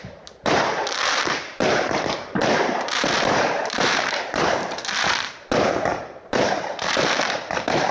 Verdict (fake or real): fake